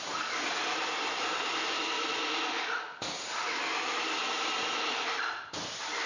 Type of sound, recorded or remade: remade